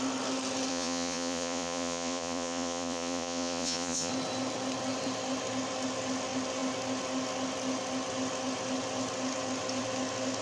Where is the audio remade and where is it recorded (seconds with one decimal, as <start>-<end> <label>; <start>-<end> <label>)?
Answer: 0.0-0.7 recorded; 0.7-4.1 remade; 4.1-10.4 recorded